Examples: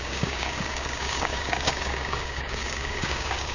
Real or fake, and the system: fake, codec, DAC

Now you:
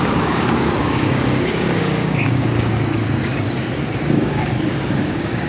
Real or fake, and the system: fake, codec, DAC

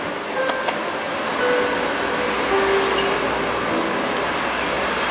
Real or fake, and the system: real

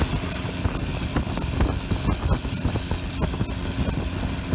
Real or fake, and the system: real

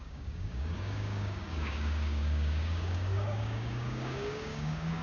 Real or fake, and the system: fake, codec, DAC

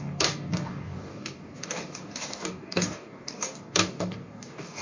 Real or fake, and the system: fake, codec, DAC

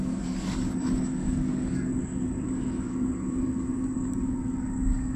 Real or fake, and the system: fake, codec, DAC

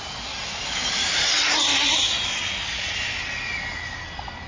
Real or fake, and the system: real